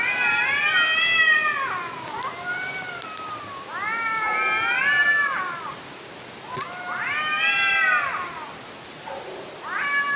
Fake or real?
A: real